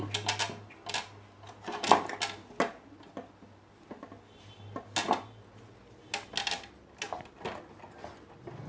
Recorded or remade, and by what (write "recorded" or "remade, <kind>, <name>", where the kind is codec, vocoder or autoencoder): recorded